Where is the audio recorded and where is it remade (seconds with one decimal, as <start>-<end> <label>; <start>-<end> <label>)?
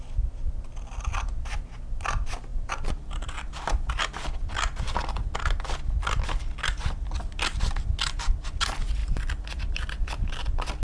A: 0.0-2.5 recorded; 2.5-5.2 remade; 5.2-9.0 recorded; 9.0-10.8 remade